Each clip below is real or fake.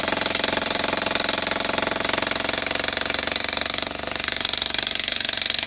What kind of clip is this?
real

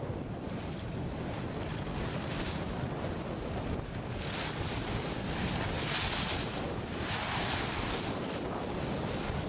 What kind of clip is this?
real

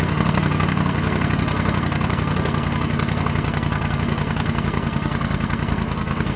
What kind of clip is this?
fake